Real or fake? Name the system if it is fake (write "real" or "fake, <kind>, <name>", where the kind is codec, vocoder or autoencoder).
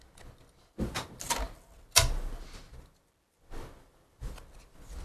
real